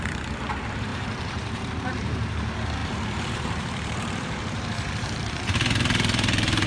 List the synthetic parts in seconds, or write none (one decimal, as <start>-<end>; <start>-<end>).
0.9-1.7; 2.8-6.7